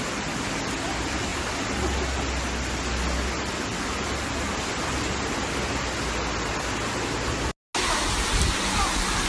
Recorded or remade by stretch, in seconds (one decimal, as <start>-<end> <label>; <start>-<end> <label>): 0.0-9.3 recorded